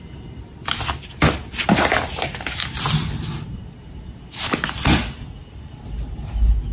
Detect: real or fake real